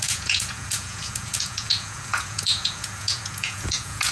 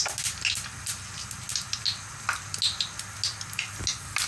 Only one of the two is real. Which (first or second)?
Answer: second